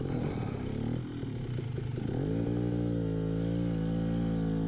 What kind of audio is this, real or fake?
real